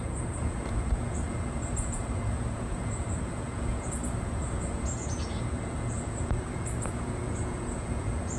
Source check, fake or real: fake